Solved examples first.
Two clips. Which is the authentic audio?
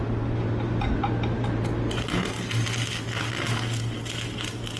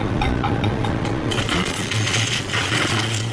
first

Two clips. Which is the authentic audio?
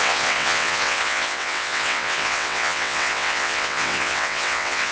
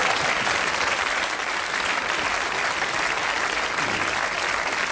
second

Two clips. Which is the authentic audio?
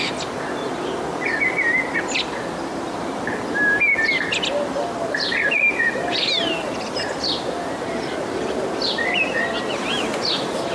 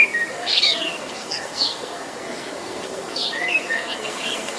first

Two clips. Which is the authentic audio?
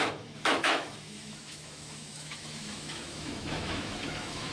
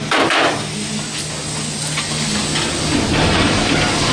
second